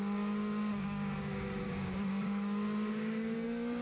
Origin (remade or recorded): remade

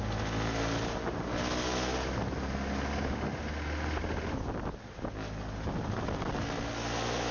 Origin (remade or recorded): recorded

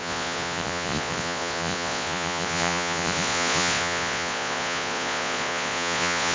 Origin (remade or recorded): remade